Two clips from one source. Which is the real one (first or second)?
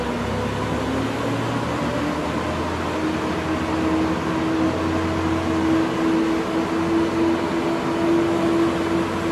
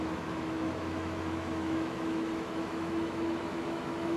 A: first